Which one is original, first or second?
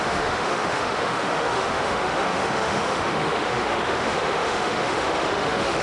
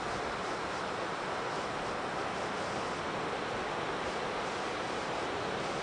second